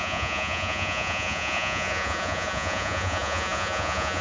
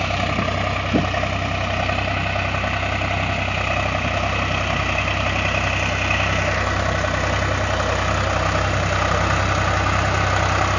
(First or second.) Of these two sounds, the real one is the second